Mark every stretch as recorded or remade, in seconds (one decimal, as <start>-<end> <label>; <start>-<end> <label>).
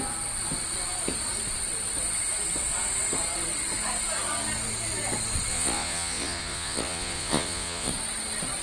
0.0-5.5 recorded; 5.5-7.9 remade; 7.9-8.6 recorded